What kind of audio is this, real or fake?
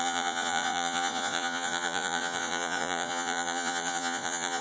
fake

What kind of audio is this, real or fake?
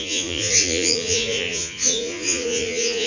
fake